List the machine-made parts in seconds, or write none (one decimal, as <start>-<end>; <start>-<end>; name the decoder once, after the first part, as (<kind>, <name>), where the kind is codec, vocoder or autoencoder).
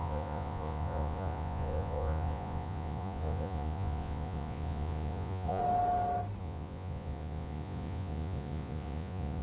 0.0-5.6 (vocoder, Vocos); 6.4-9.4